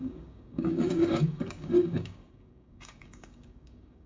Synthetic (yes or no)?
yes